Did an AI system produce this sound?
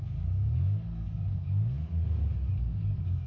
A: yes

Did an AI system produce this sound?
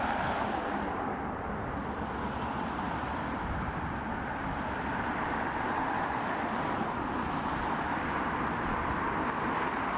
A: yes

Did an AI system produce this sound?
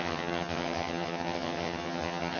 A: yes